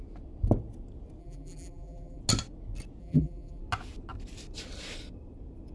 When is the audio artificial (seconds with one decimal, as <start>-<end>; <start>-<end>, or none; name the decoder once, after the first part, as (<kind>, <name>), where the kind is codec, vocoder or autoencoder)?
1.2-2.2 (vocoder, BigVGAN v2); 3.0-3.6

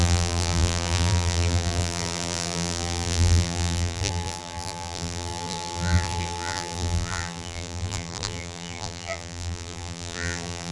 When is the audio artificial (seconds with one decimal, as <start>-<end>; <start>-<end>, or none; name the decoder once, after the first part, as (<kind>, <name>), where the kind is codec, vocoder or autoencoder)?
0.0-10.7 (vocoder, BigVGAN v2)